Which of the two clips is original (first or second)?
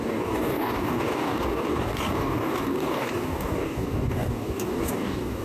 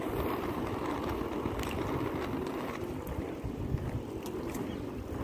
second